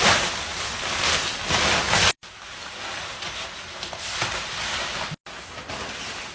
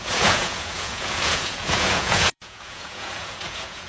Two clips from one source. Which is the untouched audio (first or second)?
first